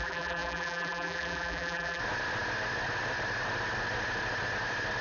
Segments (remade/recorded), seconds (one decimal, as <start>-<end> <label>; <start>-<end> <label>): 0.0-2.0 remade; 2.0-5.0 recorded